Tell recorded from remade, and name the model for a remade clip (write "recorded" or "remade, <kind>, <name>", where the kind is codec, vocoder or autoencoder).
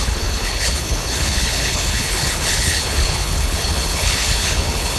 remade, codec, HILCodec